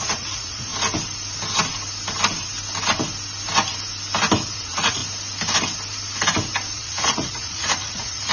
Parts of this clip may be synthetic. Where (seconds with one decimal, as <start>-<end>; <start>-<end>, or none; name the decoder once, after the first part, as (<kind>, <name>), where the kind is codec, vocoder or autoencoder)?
0.0-0.7 (vocoder, Vocos); 4.5-5.0; 6.7-8.3